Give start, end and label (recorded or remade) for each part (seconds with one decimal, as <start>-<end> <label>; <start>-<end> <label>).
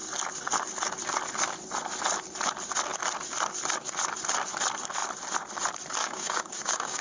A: 0.0-6.0 recorded; 6.0-7.0 remade